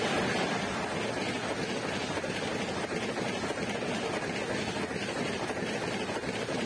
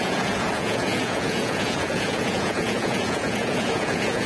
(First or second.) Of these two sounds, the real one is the first